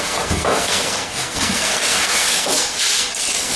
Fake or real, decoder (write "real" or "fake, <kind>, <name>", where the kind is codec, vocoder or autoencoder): fake, codec, SNAC